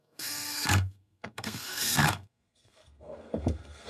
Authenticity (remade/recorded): remade